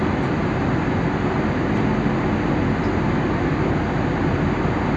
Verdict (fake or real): real